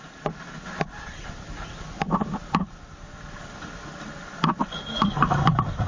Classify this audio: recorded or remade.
recorded